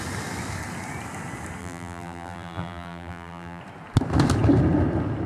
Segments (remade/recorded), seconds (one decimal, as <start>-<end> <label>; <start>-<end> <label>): 0.0-1.6 recorded; 1.6-3.6 remade; 3.6-5.3 recorded